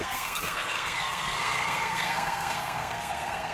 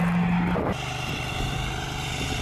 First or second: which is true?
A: second